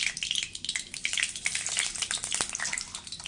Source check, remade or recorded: recorded